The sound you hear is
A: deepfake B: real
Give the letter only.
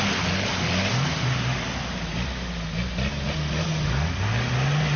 B